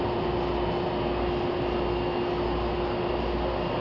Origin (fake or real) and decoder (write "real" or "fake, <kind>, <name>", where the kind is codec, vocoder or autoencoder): real